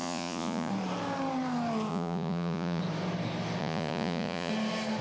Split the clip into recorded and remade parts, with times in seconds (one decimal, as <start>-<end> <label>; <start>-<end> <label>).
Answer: 0.0-0.7 remade; 0.7-1.9 recorded; 1.9-2.8 remade; 2.8-3.6 recorded; 3.6-4.5 remade; 4.5-5.0 recorded